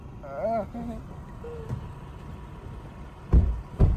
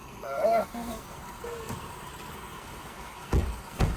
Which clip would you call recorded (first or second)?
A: first